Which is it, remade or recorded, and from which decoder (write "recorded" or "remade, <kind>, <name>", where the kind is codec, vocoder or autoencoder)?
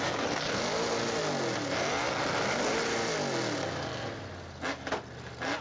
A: recorded